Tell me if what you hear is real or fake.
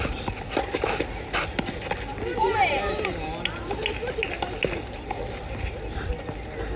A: real